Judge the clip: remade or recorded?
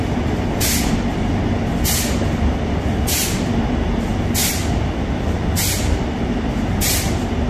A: recorded